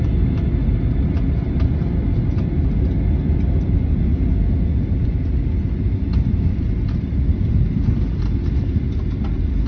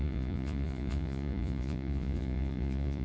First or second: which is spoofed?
second